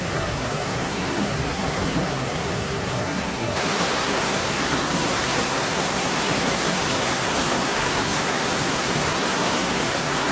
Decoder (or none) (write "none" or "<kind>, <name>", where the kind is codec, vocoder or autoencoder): codec, SNAC